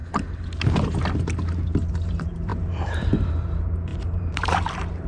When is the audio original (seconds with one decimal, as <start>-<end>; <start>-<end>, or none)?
0.0-1.9